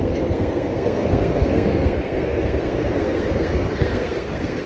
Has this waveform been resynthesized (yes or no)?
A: yes